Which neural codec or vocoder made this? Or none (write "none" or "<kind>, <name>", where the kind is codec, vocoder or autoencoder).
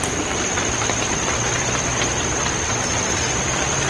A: none